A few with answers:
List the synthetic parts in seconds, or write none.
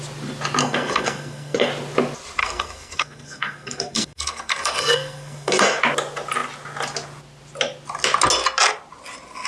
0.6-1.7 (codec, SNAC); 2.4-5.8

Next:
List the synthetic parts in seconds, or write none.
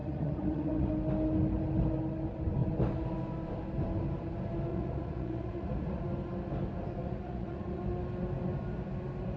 0.0-0.9 (vocoder, Vocos); 4.7-6.0; 7.0-7.8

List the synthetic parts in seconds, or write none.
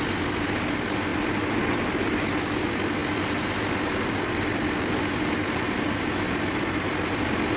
none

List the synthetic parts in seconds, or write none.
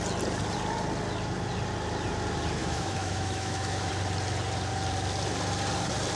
2.6-3.9 (autoencoder, DAC-VAE)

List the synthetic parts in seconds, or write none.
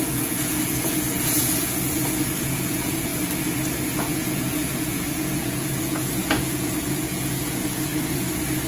0.0-3.1 (vocoder, Vocos); 4.0-7.9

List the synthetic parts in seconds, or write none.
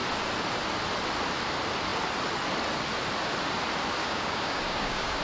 4.0-5.2 (codec, DAC)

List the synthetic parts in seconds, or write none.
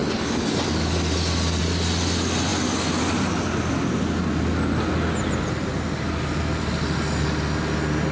none